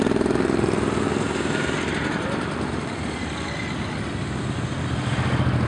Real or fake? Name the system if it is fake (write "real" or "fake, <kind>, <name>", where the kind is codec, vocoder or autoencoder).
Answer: real